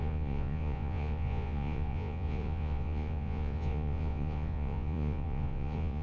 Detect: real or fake fake